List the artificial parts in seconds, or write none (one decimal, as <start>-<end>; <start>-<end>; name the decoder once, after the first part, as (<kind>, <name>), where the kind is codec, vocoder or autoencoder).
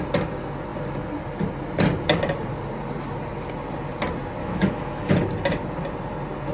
4.4-5.1 (autoencoder, DAC-VAE)